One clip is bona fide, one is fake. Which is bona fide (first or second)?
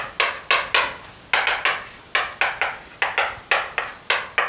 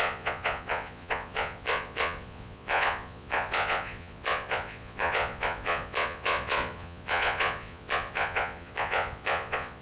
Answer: first